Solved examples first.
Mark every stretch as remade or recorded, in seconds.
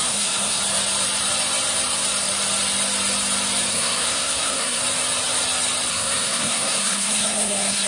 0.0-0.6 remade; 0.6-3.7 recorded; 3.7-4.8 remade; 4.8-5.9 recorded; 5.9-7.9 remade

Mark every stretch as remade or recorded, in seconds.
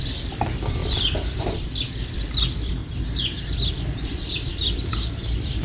0.0-2.8 remade; 2.8-3.7 recorded; 3.7-5.6 remade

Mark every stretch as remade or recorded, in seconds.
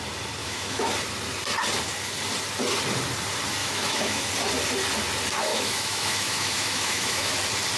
0.0-0.4 recorded; 0.4-0.9 remade; 0.9-3.6 recorded; 3.6-4.3 remade; 4.3-5.5 recorded; 5.5-7.3 remade; 7.3-7.8 recorded